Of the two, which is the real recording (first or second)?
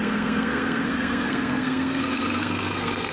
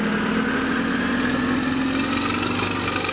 second